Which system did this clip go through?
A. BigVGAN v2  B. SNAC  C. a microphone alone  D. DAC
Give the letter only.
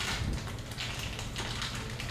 C